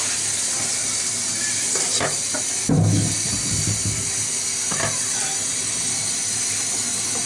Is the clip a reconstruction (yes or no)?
no